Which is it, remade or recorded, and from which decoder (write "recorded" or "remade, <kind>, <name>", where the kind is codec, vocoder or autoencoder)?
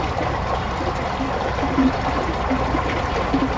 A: recorded